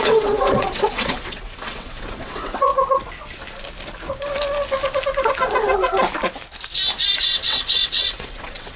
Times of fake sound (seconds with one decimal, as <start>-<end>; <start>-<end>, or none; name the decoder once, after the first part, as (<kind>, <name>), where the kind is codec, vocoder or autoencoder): 0.0-2.7 (vocoder, WaveNeXt); 7.2-8.8